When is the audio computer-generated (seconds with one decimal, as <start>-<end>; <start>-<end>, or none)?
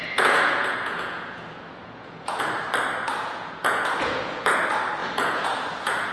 0.0-2.4; 3.1-4.6; 5.0-6.1